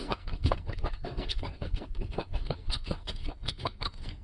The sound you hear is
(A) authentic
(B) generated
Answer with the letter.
B